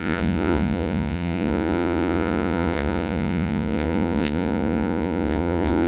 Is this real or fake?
fake